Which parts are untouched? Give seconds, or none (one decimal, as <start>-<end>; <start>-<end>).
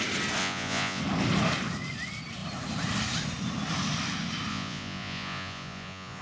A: 0.0-0.4; 1.0-4.5